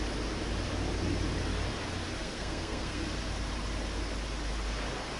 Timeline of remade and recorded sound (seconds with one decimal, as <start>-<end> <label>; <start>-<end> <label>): 0.0-2.2 recorded; 2.2-3.0 remade; 3.0-5.2 recorded